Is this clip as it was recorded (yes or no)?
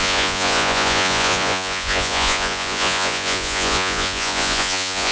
no